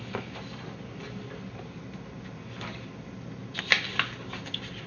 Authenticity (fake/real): real